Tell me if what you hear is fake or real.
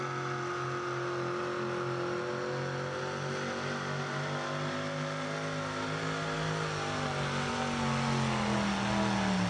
real